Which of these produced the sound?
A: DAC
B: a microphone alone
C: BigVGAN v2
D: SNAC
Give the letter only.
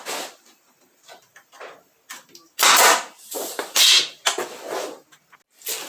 B